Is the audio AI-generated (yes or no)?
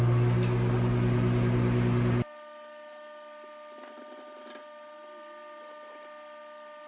no